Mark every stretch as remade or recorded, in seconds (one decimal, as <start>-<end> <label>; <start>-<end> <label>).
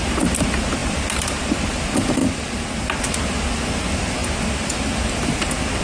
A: 0.0-0.8 recorded; 0.8-1.8 remade; 1.8-5.8 recorded